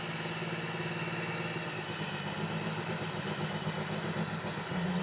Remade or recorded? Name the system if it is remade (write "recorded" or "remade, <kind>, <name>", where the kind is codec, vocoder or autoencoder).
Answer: recorded